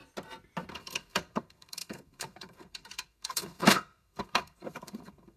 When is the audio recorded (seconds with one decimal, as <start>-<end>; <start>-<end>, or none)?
0.0-0.7